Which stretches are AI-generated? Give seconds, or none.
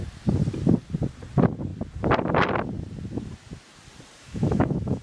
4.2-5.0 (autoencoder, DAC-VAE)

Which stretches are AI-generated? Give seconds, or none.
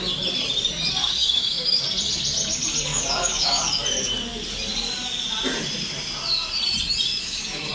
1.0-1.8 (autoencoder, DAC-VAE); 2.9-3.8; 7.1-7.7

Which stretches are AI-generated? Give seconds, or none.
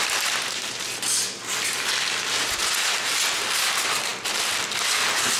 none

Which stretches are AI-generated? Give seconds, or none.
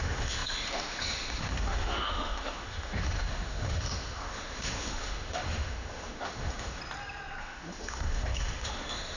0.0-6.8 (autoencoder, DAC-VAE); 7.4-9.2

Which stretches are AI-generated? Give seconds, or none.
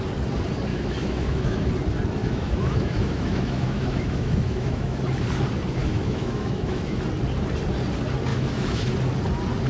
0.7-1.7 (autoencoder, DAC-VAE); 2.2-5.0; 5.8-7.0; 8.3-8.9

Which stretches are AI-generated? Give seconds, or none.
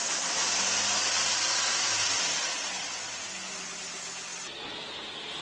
none